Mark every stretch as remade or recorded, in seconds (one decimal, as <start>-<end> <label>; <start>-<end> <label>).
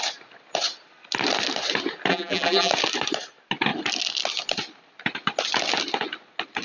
0.0-2.1 recorded; 2.1-2.7 remade; 2.7-6.6 recorded